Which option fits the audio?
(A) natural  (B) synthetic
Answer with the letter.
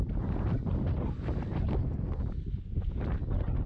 A